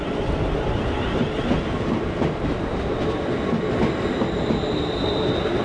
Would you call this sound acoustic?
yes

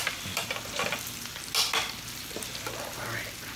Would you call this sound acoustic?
yes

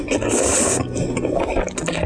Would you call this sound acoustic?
yes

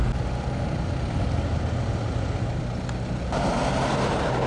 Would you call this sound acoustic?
yes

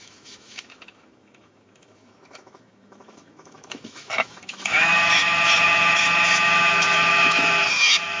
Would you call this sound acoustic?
no